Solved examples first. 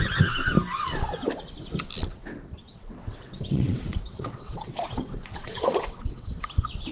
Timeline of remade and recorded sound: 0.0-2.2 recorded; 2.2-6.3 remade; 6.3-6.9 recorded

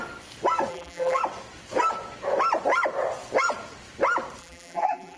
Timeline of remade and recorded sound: 0.0-0.7 recorded; 0.7-1.2 remade; 1.2-4.4 recorded; 4.4-5.2 remade